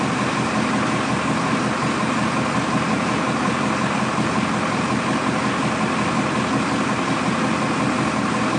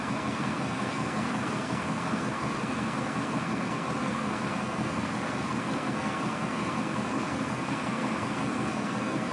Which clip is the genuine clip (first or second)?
first